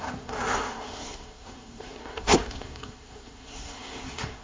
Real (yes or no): no